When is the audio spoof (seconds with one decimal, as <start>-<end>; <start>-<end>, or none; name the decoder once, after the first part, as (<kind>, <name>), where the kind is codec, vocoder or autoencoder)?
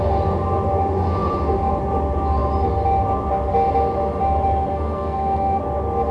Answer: 4.7-5.6 (codec, SNAC)